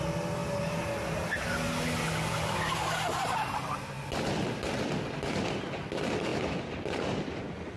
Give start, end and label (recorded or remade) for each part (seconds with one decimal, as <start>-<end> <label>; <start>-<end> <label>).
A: 0.0-7.8 recorded